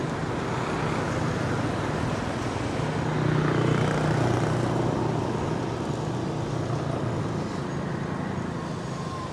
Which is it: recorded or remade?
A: recorded